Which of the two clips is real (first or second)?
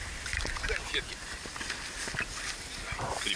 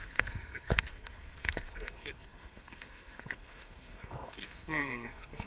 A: first